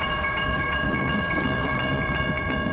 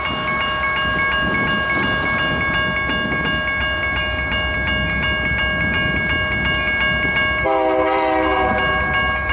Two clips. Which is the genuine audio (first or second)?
second